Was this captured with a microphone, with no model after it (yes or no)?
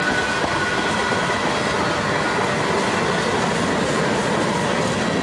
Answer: yes